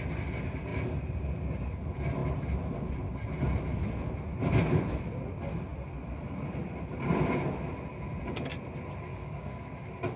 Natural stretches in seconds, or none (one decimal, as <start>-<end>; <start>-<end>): 0.0-9.1; 9.7-10.2